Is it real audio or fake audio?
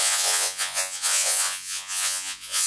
fake